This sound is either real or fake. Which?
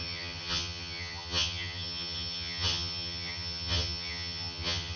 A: fake